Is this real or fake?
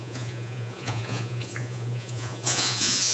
fake